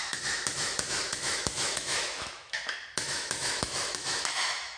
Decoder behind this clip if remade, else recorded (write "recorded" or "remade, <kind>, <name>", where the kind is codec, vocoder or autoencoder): remade, autoencoder, DAC-VAE